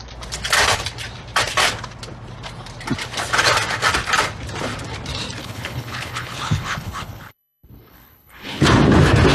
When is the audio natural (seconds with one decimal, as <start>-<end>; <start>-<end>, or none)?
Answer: 0.0-5.4; 8.6-9.3